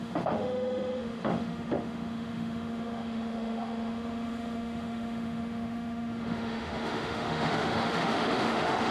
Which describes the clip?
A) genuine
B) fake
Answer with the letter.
B